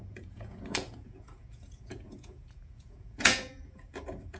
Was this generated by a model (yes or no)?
yes